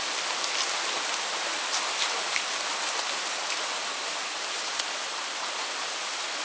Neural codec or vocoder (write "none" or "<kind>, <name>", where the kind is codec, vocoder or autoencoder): vocoder, BigVGAN v2